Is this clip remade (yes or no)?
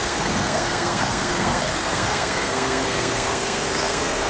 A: yes